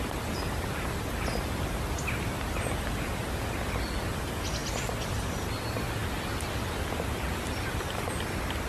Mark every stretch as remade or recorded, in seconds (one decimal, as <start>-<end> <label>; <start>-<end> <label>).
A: 0.0-4.6 recorded; 4.6-5.5 remade; 5.5-8.7 recorded